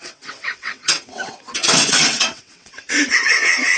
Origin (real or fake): fake